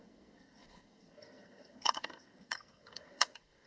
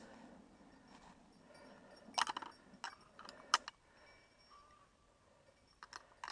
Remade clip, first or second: first